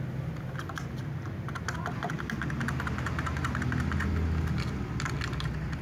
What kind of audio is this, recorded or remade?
recorded